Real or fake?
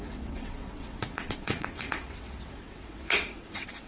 fake